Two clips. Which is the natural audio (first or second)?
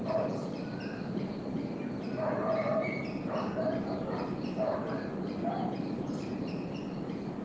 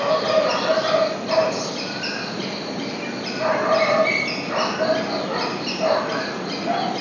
second